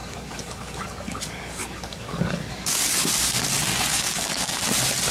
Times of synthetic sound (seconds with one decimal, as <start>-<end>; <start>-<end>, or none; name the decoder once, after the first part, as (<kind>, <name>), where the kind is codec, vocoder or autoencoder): 0.0-3.1 (codec, DAC); 3.9-4.6